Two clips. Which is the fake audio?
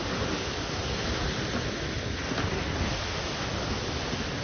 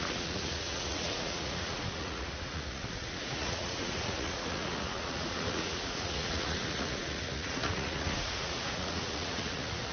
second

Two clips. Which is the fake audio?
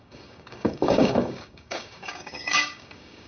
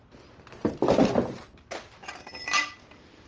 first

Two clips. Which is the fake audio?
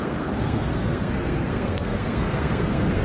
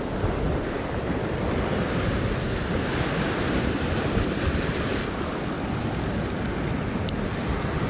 first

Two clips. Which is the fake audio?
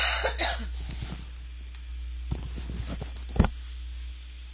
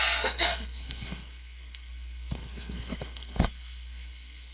second